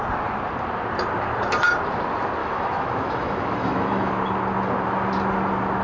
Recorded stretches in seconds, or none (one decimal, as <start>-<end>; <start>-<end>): 0.0-2.4; 4.1-5.8